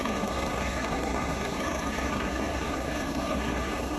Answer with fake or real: fake